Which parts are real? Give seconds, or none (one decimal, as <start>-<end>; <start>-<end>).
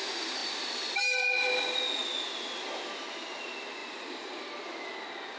0.0-2.0; 2.7-3.8; 4.5-5.4